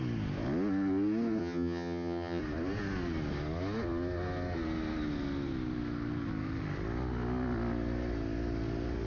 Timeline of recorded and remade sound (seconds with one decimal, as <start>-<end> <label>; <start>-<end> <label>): 0.0-1.4 recorded; 1.4-2.4 remade; 2.4-9.1 recorded